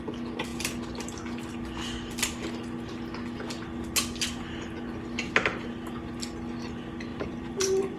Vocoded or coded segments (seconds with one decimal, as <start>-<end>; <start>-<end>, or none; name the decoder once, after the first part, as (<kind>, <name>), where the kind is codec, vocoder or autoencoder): 7.1-8.0 (vocoder, BigVGAN v2)

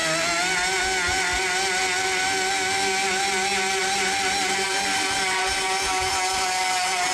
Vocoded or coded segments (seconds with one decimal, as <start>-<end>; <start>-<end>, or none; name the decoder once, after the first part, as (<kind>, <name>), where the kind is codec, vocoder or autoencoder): 3.8-6.1 (vocoder, BigVGAN v2)

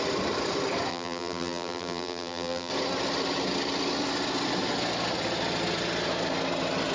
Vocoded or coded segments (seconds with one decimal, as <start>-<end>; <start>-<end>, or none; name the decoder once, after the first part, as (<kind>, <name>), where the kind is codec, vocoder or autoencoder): 0.9-2.7 (vocoder, BigVGAN v2)

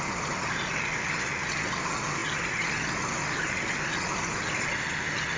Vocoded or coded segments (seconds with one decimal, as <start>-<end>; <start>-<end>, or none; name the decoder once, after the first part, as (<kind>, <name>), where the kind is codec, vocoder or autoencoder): none

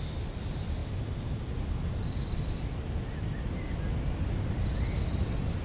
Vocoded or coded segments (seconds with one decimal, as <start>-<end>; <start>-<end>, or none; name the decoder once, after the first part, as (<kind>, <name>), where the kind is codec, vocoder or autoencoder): none